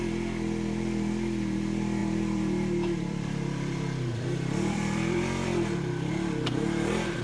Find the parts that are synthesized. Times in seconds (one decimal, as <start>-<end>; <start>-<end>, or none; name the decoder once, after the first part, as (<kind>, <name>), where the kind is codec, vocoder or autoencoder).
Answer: 2.0-6.1 (vocoder, BigVGAN v2)